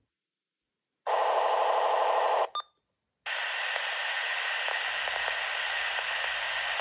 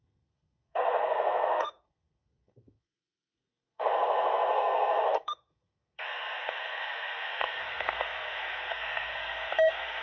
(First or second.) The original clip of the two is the first